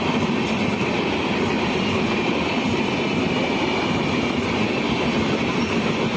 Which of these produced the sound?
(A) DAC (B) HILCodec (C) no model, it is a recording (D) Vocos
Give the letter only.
C